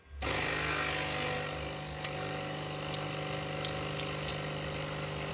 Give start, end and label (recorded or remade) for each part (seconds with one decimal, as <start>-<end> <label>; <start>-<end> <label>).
0.0-5.3 recorded